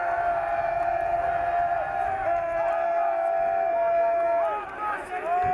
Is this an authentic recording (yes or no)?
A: yes